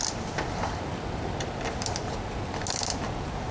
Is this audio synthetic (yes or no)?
no